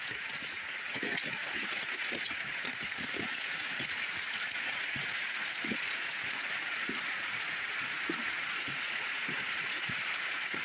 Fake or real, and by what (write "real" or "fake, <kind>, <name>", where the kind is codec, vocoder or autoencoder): fake, vocoder, Vocos